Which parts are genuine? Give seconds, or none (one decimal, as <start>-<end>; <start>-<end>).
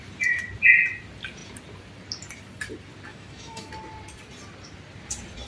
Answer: 0.0-3.1; 3.7-5.5